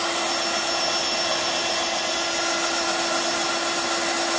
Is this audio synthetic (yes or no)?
no